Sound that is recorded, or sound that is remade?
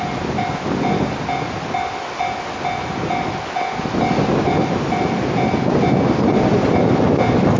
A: recorded